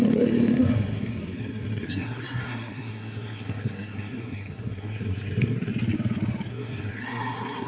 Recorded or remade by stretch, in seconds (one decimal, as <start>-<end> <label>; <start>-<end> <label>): 0.0-5.7 remade; 5.7-6.5 recorded; 6.5-7.7 remade